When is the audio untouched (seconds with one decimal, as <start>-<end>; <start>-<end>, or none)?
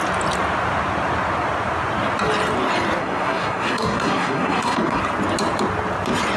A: 0.0-3.0; 5.0-6.4